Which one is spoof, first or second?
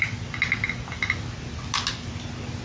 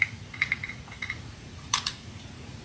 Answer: second